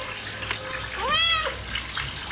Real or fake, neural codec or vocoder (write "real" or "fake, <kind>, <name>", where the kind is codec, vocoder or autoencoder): real